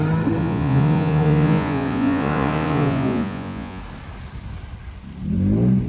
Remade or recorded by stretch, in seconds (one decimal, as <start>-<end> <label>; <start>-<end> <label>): 0.0-0.4 recorded; 0.4-3.8 remade; 3.8-5.9 recorded